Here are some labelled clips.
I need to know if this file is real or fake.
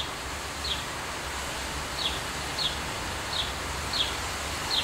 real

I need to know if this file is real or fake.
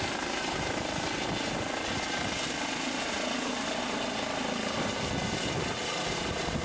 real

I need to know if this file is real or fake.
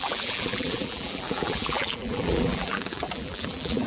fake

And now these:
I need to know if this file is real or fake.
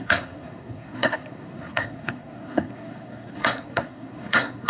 fake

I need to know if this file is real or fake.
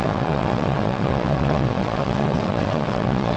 fake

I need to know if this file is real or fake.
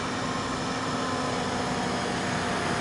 real